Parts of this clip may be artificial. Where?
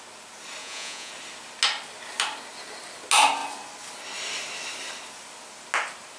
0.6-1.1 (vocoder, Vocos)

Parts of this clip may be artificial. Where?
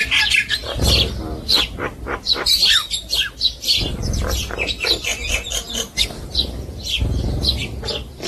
0.0-0.8 (vocoder, BigVGAN v2)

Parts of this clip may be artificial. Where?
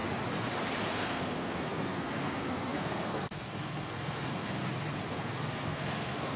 0.9-4.6 (codec, SNAC); 5.1-6.4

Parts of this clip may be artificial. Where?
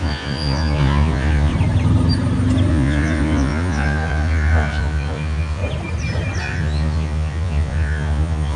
0.0-1.5 (vocoder, Vocos); 2.7-5.6; 6.4-8.6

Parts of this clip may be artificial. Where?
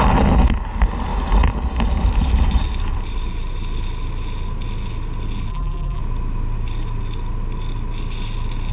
5.5-6.0 (vocoder, BigVGAN v2)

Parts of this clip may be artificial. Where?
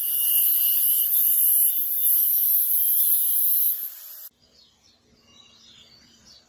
none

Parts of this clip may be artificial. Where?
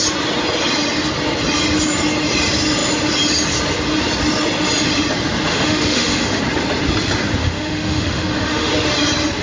5.5-6.4 (autoencoder, DAC-VAE); 7.4-8.7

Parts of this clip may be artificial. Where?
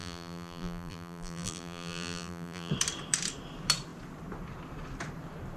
0.0-2.7 (vocoder, BigVGAN v2)